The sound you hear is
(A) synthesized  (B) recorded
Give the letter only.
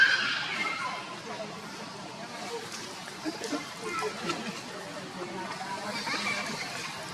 B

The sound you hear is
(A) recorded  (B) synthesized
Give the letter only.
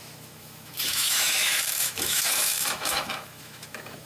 B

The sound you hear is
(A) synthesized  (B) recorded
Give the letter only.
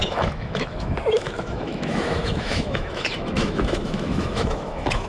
A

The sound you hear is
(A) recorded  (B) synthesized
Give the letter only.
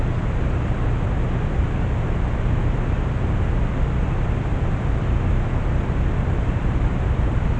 A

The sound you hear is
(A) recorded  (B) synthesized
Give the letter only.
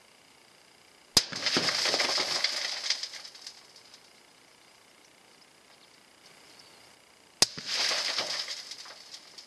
A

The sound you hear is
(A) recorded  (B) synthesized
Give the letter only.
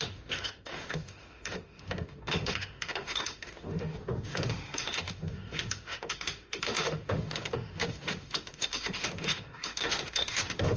B